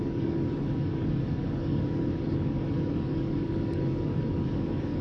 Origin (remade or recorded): remade